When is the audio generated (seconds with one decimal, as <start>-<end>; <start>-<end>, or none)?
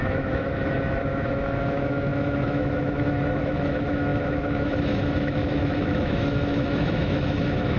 0.0-7.8